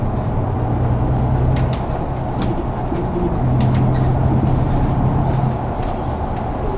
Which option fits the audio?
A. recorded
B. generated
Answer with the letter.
A